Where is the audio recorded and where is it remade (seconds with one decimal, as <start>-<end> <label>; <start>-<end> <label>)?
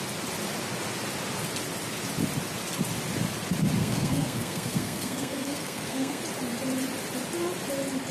0.0-3.8 recorded; 3.8-6.2 remade; 6.2-8.1 recorded